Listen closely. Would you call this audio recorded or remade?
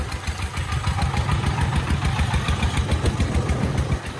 recorded